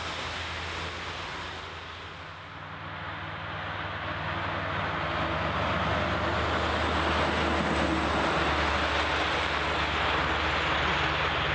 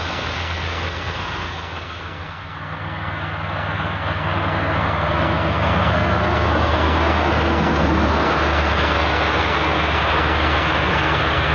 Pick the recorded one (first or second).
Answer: first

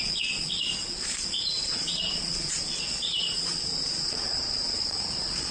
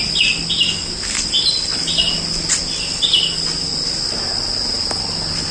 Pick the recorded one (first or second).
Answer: second